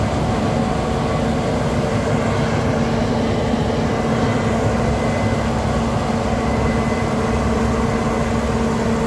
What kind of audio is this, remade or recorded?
recorded